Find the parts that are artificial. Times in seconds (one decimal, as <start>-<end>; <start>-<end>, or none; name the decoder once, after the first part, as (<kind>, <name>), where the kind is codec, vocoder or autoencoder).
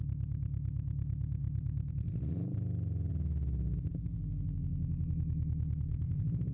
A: 1.4-1.9 (vocoder, BigVGAN v2)